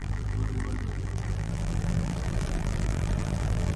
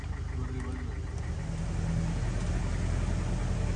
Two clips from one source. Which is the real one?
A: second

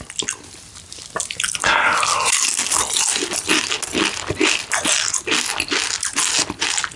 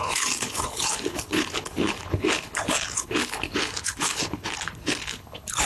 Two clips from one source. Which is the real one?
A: first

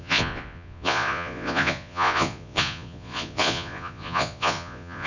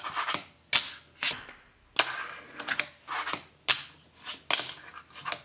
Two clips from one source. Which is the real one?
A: second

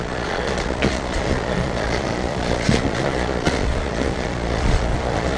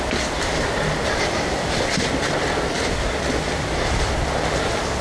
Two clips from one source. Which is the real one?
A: second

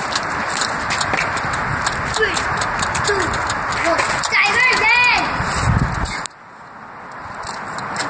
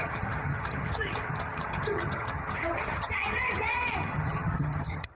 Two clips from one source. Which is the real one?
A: first